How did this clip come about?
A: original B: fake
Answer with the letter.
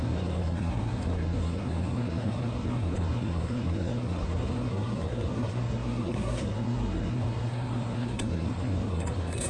B